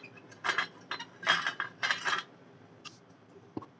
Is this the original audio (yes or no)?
yes